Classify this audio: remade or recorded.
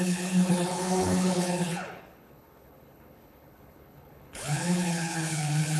remade